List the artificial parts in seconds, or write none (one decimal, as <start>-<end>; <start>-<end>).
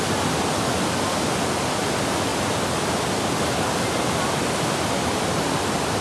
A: none